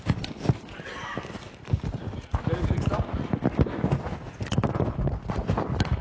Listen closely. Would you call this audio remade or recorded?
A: remade